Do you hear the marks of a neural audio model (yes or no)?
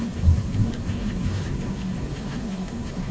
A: yes